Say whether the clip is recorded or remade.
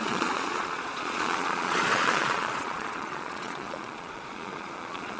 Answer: remade